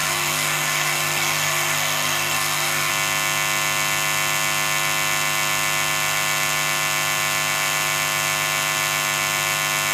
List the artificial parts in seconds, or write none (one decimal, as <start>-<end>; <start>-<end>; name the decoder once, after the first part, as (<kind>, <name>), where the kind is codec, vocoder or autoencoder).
0.0-2.9 (codec, SNAC)